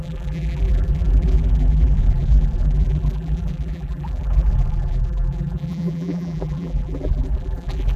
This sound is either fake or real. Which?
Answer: fake